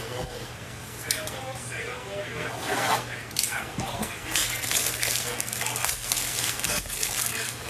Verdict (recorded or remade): remade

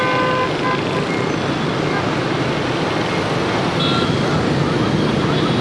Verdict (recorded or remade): recorded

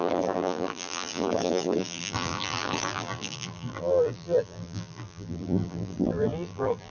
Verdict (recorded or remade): remade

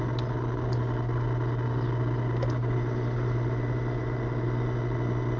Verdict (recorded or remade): recorded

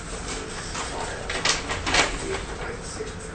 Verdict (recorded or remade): recorded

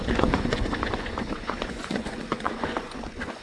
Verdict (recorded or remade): remade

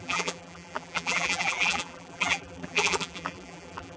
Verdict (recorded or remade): remade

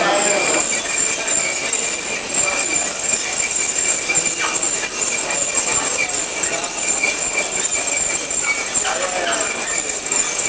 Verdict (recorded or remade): recorded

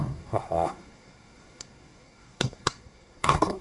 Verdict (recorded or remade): remade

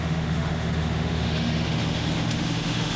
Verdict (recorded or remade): remade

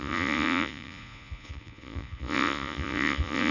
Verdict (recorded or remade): remade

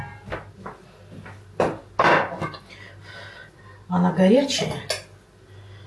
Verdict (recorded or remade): recorded